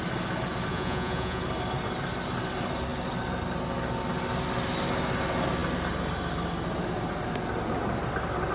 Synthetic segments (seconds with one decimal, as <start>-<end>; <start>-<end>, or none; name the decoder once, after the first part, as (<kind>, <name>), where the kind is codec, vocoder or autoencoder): 0.7-1.4 (vocoder, Vocos)